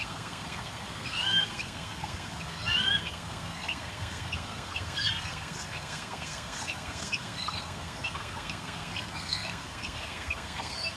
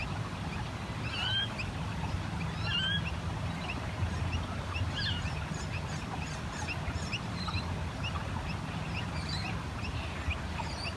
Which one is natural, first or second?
second